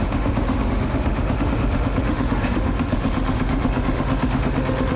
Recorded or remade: remade